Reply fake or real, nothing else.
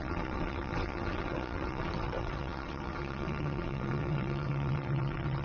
fake